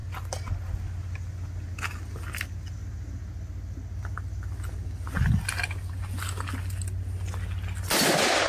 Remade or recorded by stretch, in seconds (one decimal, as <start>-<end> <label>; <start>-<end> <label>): 0.0-8.5 recorded